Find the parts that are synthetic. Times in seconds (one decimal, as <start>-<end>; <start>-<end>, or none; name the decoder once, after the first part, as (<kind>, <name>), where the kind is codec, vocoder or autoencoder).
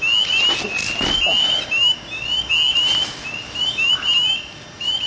none